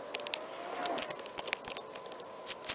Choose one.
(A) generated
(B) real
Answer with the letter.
B